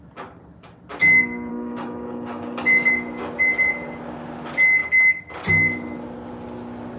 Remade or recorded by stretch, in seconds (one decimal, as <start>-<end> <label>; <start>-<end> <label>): 0.0-1.5 recorded; 1.5-2.9 remade; 2.9-7.0 recorded